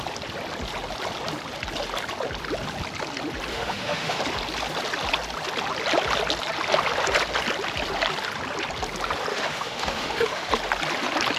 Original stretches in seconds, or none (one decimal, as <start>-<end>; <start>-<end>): 0.0-3.5; 4.2-9.3; 10.5-11.4